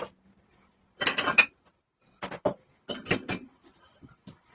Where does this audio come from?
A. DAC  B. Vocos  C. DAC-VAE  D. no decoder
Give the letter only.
D